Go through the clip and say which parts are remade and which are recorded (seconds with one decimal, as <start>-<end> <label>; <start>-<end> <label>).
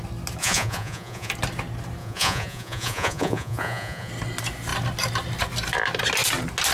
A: 0.0-0.4 recorded; 0.4-1.3 remade; 1.3-2.0 recorded; 2.0-4.1 remade; 4.1-6.7 recorded